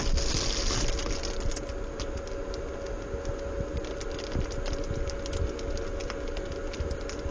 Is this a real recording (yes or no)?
yes